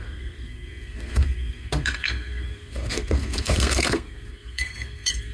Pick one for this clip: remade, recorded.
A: remade